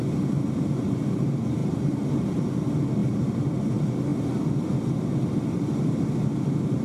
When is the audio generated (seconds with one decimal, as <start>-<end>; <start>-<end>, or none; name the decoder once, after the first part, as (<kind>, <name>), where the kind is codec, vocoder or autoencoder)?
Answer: 1.6-2.6 (vocoder, BigVGAN v2); 3.0-3.6